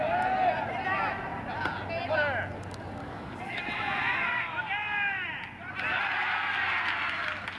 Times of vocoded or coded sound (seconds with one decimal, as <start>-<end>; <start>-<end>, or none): 3.0-3.6

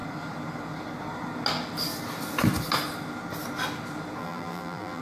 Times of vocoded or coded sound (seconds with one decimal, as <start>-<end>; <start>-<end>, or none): 4.2-5.0